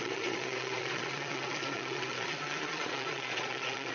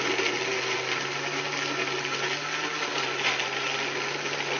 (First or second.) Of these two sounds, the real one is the second